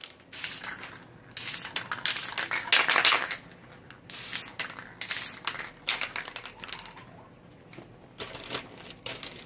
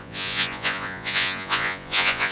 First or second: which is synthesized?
second